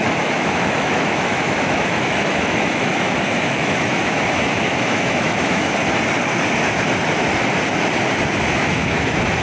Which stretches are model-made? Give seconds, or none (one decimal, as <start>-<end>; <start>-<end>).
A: 0.0-5.8; 8.5-9.4